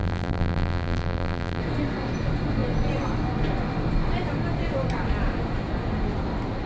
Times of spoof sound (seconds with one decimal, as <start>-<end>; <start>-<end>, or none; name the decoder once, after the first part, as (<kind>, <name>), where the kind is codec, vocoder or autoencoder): 0.0-1.6 (vocoder, BigVGAN v2)